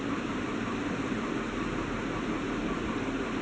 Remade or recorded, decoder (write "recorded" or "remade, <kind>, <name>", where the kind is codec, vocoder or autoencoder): recorded